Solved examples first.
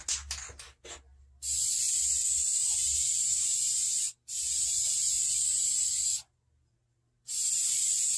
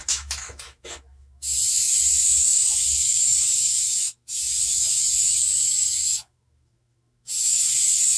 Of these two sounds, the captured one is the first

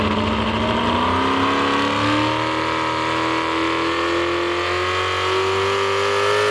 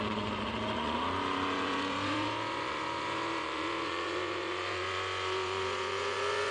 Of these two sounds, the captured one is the first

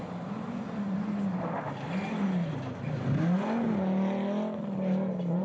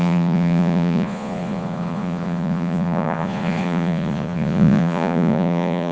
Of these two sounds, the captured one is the first